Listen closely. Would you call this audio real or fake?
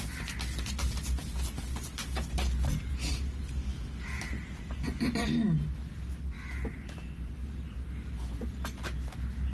real